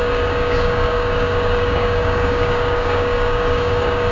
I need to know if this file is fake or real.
fake